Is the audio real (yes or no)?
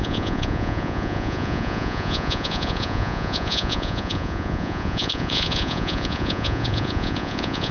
no